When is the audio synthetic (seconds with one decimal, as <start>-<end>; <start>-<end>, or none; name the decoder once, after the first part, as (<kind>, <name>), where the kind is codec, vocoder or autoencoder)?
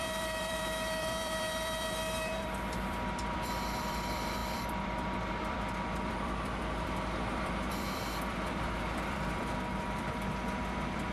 0.0-11.1 (vocoder, BigVGAN v2)